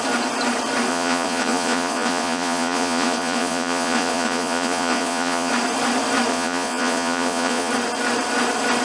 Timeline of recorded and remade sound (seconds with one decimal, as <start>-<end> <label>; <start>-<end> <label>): 0.0-0.9 recorded; 0.9-5.5 remade; 5.5-6.3 recorded; 6.3-7.7 remade; 7.7-8.8 recorded